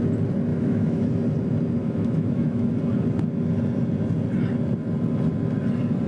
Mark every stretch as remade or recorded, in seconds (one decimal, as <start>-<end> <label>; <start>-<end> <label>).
0.0-0.5 recorded; 0.5-1.1 remade; 1.1-1.8 recorded; 1.8-2.7 remade; 2.7-6.1 recorded